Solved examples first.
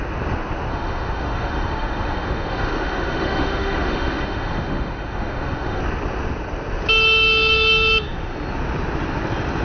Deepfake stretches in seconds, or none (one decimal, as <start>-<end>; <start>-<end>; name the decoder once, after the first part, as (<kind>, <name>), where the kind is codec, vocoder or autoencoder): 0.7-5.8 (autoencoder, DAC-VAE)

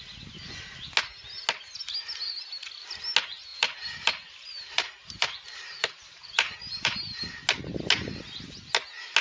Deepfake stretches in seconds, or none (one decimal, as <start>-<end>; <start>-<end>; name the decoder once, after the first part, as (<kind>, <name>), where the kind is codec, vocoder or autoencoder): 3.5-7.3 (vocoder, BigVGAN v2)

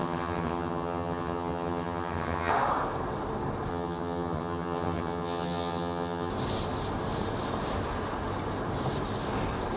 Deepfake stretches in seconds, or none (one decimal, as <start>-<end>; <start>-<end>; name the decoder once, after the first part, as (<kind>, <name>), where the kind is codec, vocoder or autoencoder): 0.0-2.5 (vocoder, HiFi-GAN); 3.7-6.3

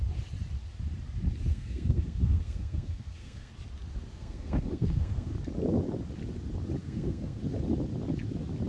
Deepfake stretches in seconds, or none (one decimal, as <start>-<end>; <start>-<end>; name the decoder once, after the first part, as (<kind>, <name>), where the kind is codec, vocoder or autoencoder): 1.5-3.5 (codec, SNAC); 4.1-5.3; 6.8-7.4

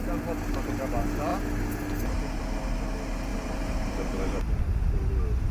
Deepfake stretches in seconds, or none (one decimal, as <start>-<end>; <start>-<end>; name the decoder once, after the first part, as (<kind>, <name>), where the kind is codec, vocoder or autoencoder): 3.3-4.6 (vocoder, BigVGAN v2)

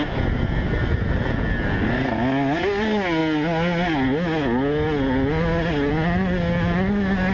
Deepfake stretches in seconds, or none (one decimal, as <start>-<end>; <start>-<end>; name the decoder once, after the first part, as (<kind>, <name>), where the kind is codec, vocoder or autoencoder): none

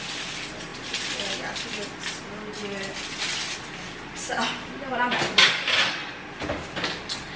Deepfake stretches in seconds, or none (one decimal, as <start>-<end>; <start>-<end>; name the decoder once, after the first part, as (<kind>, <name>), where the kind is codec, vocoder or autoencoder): none